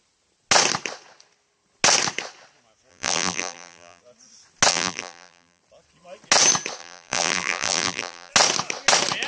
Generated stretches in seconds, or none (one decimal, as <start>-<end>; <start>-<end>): 2.9-4.0; 4.7-5.6; 6.8-8.3